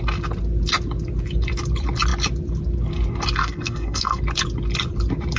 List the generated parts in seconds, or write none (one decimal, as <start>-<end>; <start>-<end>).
3.4-4.2